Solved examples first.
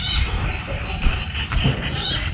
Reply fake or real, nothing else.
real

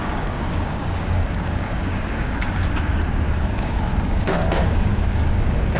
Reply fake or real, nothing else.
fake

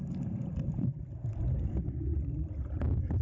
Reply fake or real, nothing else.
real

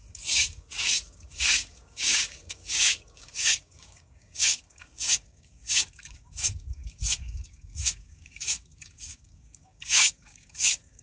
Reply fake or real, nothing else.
fake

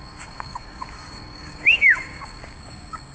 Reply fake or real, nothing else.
fake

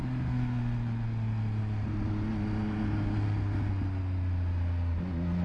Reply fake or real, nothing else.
real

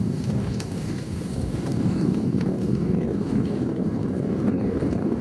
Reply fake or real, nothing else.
fake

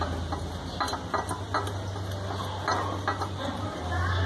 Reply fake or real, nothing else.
real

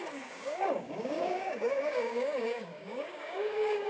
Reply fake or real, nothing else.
fake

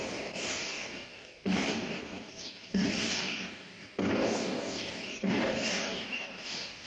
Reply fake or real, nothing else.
fake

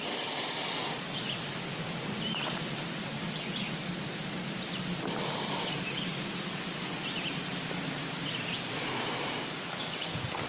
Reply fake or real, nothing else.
real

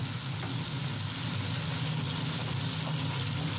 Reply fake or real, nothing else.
real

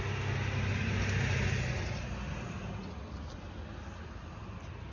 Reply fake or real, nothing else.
real